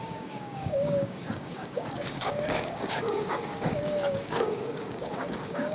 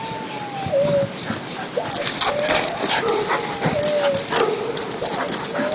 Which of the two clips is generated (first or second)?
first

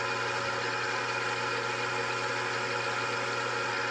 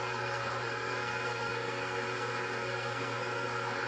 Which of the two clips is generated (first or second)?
second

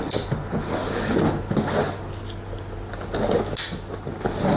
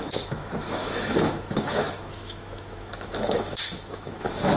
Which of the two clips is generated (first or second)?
second